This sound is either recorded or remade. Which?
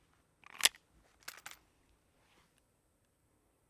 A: recorded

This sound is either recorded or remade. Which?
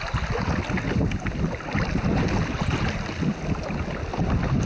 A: recorded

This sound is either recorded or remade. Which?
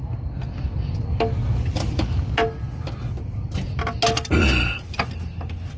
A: recorded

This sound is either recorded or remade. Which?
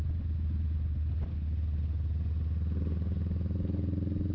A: recorded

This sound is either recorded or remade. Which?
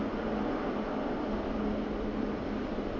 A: recorded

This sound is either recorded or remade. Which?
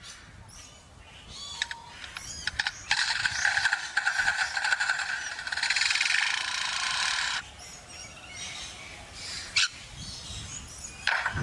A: recorded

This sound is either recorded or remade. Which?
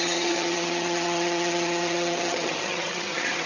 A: remade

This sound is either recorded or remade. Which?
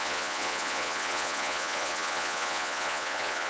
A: remade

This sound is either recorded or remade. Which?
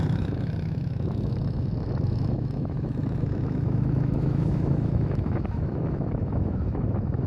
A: remade